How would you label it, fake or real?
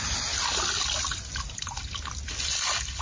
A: real